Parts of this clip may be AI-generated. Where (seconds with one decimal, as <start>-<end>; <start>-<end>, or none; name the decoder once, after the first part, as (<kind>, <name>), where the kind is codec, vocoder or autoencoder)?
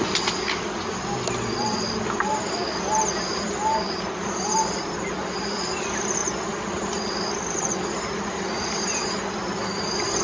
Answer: none